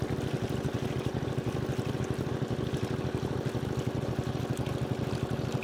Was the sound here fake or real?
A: real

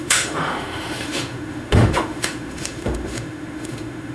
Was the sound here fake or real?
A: fake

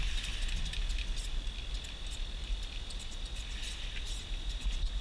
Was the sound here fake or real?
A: real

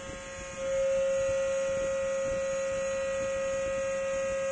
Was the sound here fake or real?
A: real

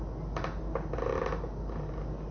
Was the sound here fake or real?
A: real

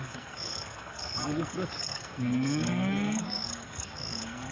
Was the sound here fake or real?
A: fake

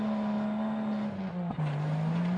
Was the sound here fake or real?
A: real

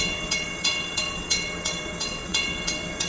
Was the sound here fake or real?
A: fake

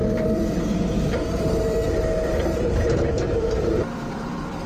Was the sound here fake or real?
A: fake